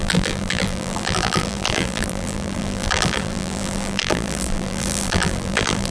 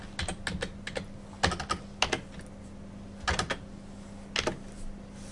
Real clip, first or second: second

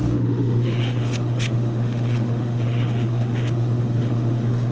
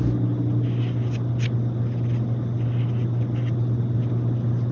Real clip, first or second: second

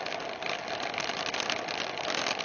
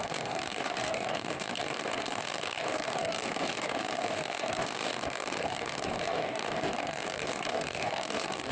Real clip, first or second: first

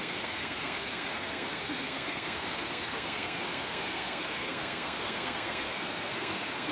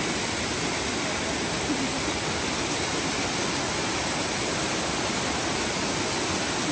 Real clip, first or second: second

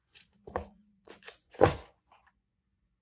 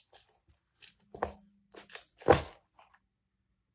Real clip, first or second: second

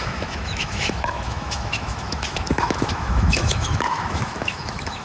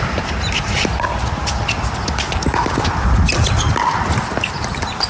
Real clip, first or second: second